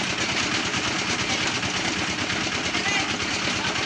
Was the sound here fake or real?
real